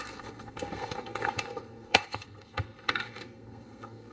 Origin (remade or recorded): remade